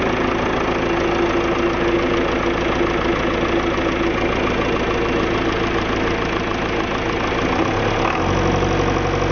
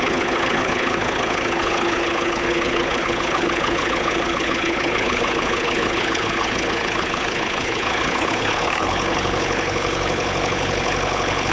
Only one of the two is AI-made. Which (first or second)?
second